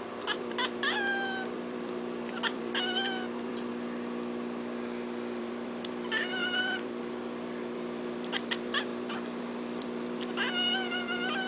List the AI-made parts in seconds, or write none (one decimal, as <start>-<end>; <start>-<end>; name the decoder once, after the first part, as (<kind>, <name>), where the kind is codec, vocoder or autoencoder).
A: 0.0-3.7 (vocoder, BigVGAN v2); 5.4-11.5